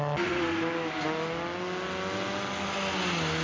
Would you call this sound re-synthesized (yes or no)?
no